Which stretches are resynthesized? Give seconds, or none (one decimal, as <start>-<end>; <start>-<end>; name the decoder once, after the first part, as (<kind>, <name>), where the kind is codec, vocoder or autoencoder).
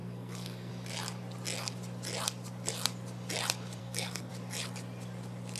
0.0-0.7 (codec, SNAC); 3.8-4.3